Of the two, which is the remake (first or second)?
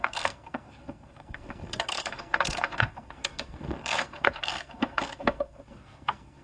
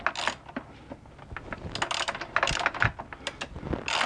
first